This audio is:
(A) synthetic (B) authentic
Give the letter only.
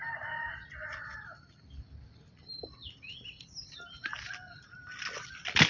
B